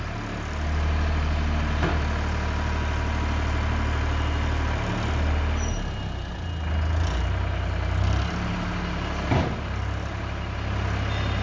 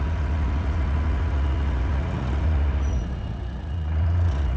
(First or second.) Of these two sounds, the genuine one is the first